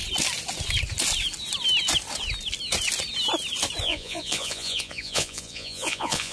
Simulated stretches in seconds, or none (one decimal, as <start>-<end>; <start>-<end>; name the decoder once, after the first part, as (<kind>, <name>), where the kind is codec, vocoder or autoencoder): 3.8-6.3 (vocoder, Vocos)